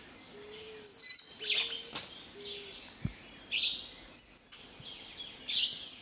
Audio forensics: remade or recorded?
recorded